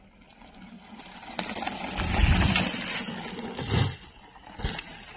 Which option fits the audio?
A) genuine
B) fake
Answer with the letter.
A